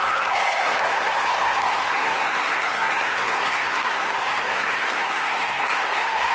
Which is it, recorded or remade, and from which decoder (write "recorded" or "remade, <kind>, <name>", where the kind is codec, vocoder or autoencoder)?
remade, codec, SNAC